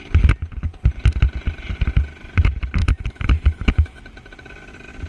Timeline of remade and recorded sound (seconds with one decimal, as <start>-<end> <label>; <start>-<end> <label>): 0.0-2.8 recorded; 2.8-4.0 remade; 4.0-5.1 recorded